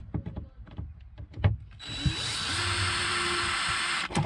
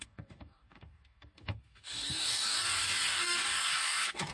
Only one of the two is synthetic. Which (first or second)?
second